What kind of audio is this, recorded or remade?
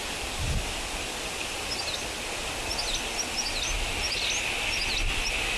recorded